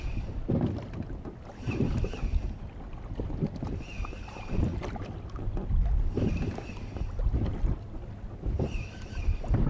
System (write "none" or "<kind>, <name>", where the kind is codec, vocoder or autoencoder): none